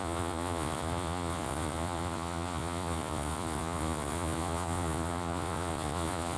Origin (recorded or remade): remade